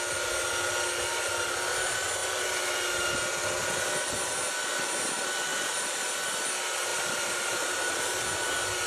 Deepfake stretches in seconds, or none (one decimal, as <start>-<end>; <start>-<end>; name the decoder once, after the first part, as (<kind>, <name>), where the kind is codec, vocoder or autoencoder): 5.5-6.1 (vocoder, BigVGAN v2); 6.9-8.0